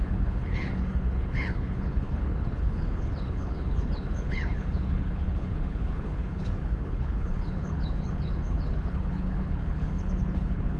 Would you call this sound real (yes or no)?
no